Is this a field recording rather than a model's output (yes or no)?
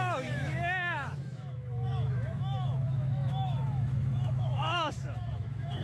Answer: no